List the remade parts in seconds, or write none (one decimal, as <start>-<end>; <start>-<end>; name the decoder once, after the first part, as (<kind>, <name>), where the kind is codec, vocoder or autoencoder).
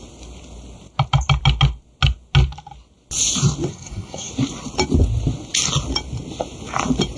3.7-4.3 (codec, SNAC)